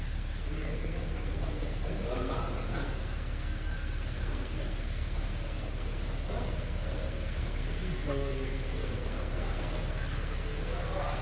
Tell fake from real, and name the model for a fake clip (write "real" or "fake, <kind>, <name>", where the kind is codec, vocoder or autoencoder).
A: fake, codec, SNAC